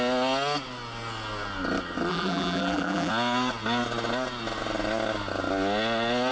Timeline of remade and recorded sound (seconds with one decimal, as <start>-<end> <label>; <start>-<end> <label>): 0.0-2.1 recorded; 2.1-3.1 remade; 3.1-6.3 recorded

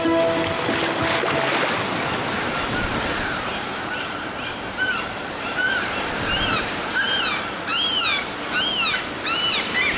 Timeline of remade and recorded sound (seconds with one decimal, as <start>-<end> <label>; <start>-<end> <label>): 0.0-2.9 recorded; 2.9-7.3 remade; 7.3-10.0 recorded